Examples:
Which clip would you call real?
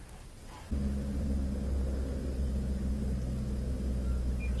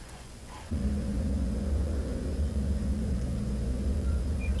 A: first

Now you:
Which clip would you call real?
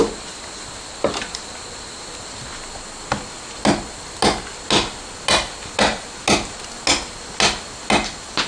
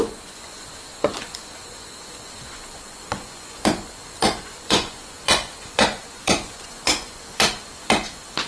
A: first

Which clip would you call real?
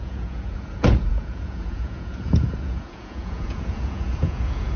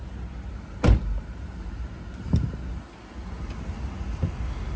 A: second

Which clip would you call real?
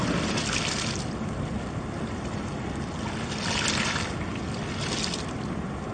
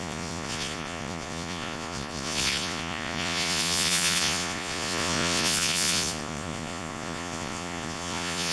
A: first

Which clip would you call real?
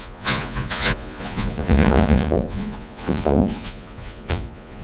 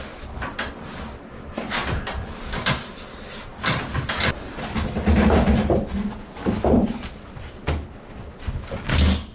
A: second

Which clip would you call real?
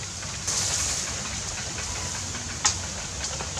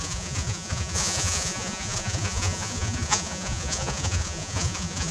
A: first